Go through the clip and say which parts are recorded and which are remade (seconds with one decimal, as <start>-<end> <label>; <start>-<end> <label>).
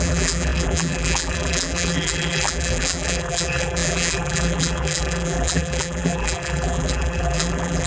0.0-7.9 remade